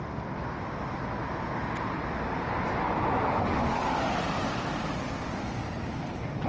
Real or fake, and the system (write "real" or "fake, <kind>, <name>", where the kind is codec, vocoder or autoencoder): real